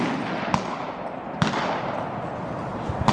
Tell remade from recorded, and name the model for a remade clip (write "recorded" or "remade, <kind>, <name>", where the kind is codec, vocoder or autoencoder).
recorded